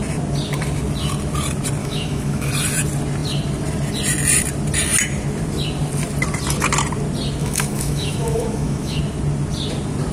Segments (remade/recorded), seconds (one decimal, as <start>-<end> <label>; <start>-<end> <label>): 0.0-1.8 recorded; 1.8-2.5 remade; 2.5-7.4 recorded; 7.4-9.0 remade; 9.0-10.1 recorded